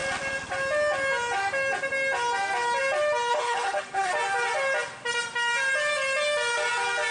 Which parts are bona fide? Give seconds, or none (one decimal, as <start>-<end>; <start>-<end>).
0.0-3.3; 4.1-7.1